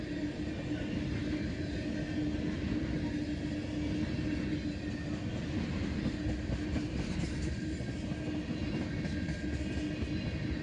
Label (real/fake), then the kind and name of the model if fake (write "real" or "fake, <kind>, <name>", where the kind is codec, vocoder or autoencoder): real